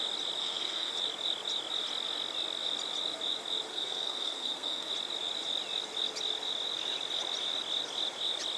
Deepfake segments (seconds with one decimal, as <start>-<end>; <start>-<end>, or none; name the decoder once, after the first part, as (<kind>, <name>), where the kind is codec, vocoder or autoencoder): 0.4-0.9 (codec, SNAC); 3.7-4.9